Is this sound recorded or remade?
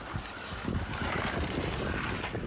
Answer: recorded